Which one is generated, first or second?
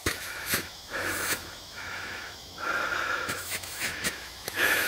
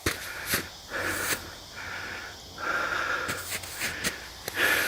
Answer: first